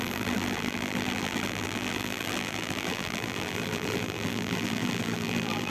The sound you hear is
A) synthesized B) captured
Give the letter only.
A